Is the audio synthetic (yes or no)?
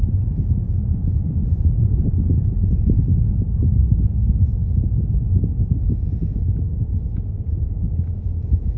yes